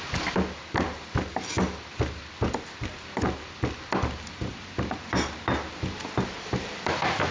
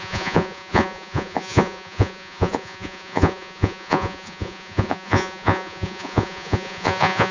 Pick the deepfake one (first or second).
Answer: second